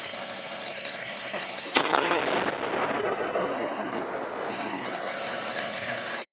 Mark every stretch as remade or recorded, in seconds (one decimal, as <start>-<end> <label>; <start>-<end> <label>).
0.0-2.2 remade; 2.2-3.0 recorded; 3.0-4.0 remade; 4.0-4.5 recorded; 4.5-6.3 remade